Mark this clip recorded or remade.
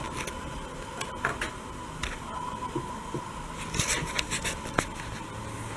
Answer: recorded